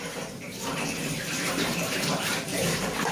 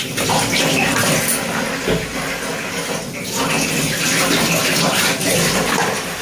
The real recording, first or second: second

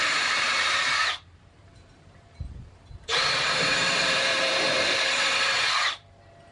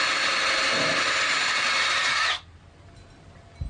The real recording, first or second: second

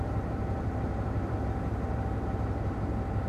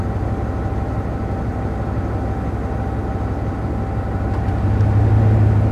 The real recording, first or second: second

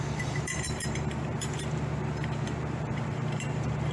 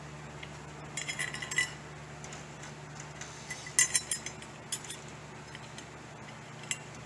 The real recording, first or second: second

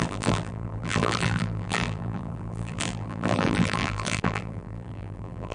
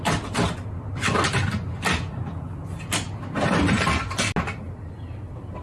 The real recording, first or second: second